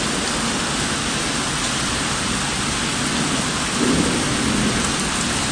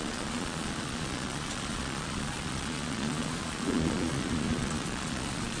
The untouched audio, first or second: first